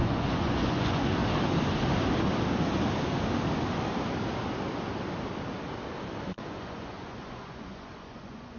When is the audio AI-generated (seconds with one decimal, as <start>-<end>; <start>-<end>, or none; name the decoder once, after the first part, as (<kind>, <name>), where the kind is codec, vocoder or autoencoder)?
0.0-1.2 (vocoder, Vocos); 6.2-8.6